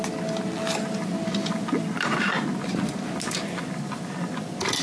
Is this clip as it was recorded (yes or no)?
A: yes